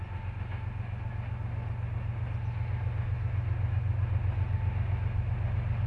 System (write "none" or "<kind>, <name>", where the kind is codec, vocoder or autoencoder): none